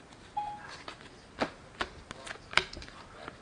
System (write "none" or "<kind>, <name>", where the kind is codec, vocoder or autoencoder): none